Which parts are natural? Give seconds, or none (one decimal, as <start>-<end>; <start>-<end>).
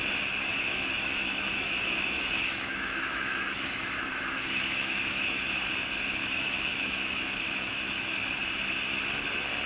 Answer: 0.0-0.5; 5.4-6.2; 8.3-9.7